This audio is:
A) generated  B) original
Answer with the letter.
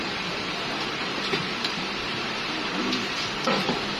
A